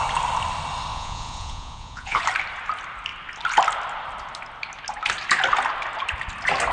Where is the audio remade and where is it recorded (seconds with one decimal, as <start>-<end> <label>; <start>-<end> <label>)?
0.0-0.9 recorded; 0.9-2.2 remade; 2.2-6.7 recorded